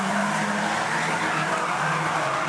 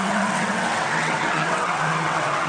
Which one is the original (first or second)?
first